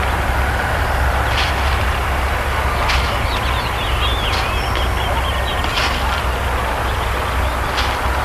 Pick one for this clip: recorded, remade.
recorded